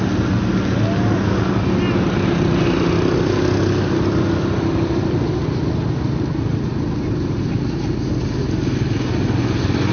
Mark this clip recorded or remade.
recorded